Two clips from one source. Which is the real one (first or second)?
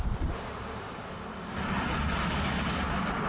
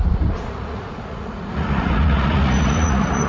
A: first